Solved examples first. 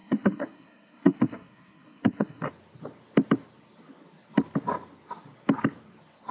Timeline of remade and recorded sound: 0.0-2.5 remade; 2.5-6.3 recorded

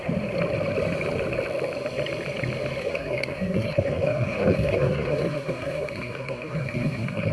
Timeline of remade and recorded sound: 0.0-2.8 recorded; 2.8-7.3 remade

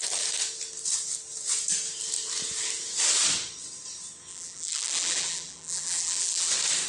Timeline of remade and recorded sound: 0.0-4.3 recorded; 4.3-6.5 remade; 6.5-6.9 recorded

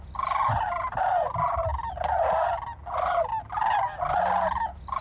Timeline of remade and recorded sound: 0.0-5.0 recorded

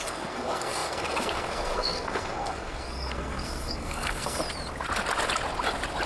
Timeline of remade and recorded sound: 0.0-4.4 remade; 4.4-6.1 recorded

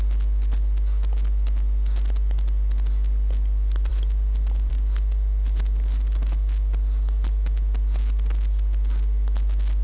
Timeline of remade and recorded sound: 0.0-9.8 recorded

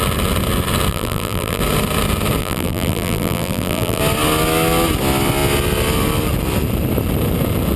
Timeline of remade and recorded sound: 0.0-0.9 recorded; 0.9-1.6 remade; 1.6-2.4 recorded; 2.4-4.0 remade; 4.0-7.8 recorded